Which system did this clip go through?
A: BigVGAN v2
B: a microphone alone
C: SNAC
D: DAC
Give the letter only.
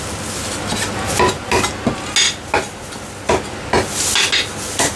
B